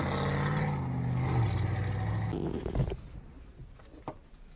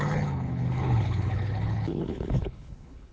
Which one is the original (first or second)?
first